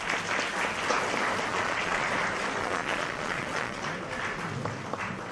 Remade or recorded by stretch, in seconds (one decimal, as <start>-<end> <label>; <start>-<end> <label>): 0.0-1.5 recorded; 1.5-2.1 remade; 2.1-2.6 recorded; 2.6-3.8 remade; 3.8-5.3 recorded

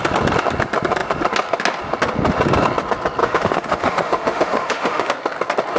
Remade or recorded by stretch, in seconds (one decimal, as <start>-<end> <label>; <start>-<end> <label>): 0.0-3.2 recorded; 3.2-5.1 remade; 5.1-5.8 recorded

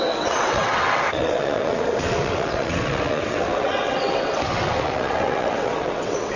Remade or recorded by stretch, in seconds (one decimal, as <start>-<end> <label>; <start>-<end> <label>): 0.0-6.4 remade